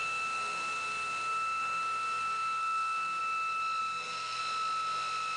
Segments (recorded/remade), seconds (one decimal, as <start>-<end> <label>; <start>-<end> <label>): 0.0-3.2 remade; 3.2-3.8 recorded; 3.8-4.4 remade; 4.4-5.4 recorded